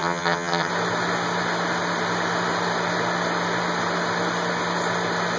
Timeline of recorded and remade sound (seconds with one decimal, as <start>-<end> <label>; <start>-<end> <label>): 0.0-0.7 remade; 0.7-5.4 recorded